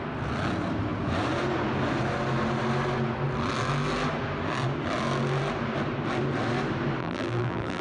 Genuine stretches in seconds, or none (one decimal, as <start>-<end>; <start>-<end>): 0.0-7.0